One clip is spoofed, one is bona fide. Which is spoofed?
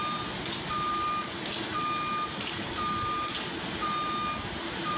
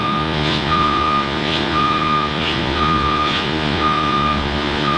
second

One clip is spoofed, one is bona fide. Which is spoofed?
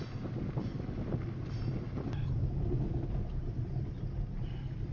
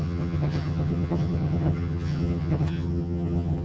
second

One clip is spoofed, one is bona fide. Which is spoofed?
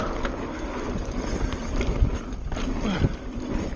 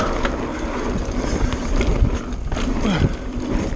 first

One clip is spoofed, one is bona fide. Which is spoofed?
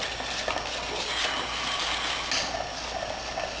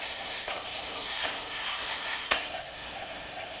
second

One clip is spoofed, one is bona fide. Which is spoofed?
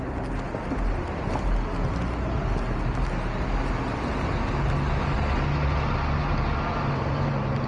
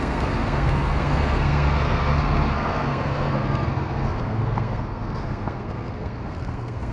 second